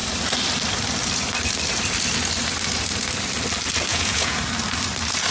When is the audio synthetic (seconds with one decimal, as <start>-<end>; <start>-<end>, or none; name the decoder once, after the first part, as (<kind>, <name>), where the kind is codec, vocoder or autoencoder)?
3.9-4.4 (vocoder, Vocos)